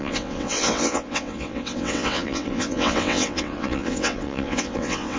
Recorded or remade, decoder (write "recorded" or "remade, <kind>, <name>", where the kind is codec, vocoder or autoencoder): remade, vocoder, WaveNeXt